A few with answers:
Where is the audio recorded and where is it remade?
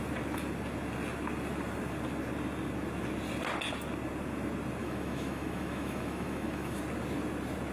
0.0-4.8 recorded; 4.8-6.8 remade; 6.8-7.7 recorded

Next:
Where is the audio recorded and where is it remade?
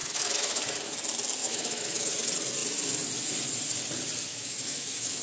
0.0-0.6 remade; 0.6-1.4 recorded; 1.4-2.1 remade; 2.1-4.3 recorded; 4.3-5.2 remade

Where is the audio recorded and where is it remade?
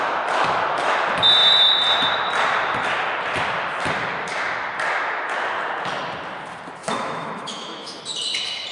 0.0-6.8 recorded; 6.8-8.0 remade; 8.0-8.7 recorded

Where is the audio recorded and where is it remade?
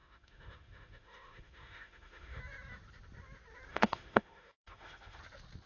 0.0-2.4 remade; 2.4-3.7 recorded; 3.7-5.2 remade; 5.2-5.7 recorded